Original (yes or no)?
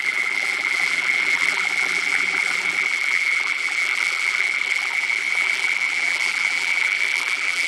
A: no